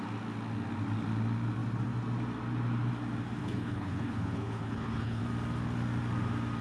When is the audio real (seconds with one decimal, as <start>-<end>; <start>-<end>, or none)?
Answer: 0.0-3.4; 5.2-6.6